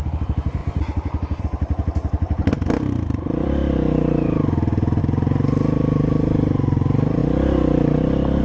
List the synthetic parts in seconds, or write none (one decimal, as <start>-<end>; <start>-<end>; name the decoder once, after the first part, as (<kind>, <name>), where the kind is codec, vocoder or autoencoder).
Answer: 0.0-0.6 (vocoder, BigVGAN v2); 1.4-3.6; 5.0-7.2